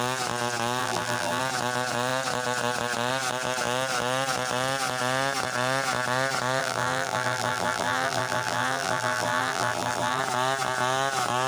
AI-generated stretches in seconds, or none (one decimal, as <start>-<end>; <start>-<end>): 0.8-1.4; 6.6-10.2